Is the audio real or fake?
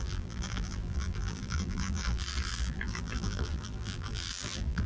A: fake